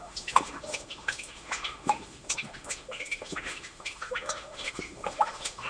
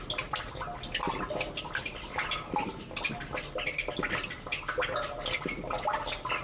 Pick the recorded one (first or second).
second